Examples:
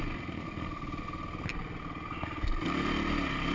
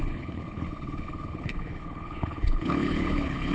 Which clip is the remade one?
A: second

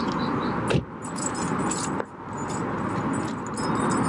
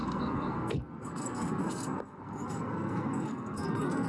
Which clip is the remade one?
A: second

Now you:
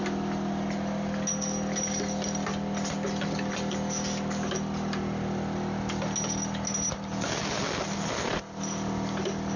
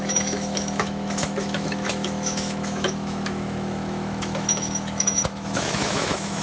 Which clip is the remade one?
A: second